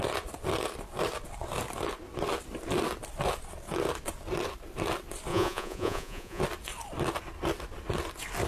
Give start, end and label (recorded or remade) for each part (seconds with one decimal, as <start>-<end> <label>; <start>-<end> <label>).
0.0-5.3 recorded; 5.3-6.4 remade; 6.4-8.5 recorded